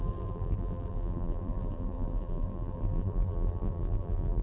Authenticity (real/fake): fake